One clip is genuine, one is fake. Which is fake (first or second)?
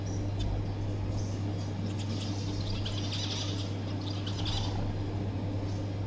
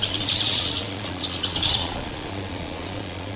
second